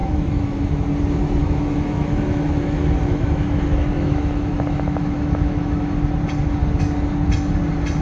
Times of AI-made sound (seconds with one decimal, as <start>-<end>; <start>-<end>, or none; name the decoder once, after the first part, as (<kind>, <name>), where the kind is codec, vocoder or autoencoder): 0.0-0.6 (autoencoder, DAC-VAE); 1.4-6.0